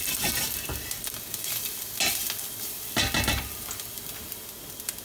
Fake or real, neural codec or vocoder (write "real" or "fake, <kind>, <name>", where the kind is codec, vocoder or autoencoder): real